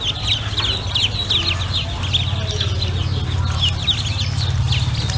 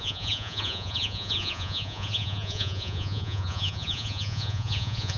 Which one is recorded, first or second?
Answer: first